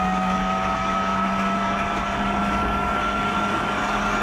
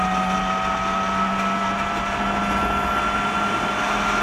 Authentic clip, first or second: second